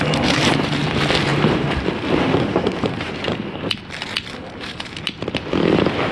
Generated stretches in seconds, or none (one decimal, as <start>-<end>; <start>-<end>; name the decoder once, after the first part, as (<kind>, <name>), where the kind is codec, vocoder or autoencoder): 0.0-0.8 (vocoder, BigVGAN v2); 1.3-3.1; 4.4-5.2

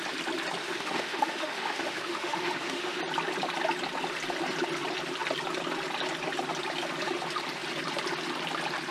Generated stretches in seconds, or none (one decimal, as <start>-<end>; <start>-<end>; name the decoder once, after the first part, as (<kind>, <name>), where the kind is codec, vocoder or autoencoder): 0.6-3.0 (autoencoder, DAC-VAE)

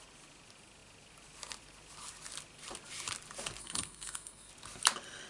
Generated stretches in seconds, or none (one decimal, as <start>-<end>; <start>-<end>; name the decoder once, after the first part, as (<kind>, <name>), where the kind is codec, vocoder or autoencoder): 3.6-4.5 (codec, SNAC)

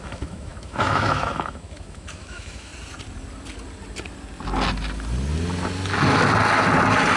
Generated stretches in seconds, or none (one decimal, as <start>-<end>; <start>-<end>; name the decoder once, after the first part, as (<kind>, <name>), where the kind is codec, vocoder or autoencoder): 0.0-2.7 (autoencoder, DAC-VAE)